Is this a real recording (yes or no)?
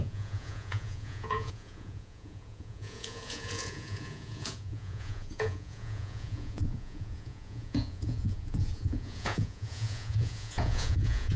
no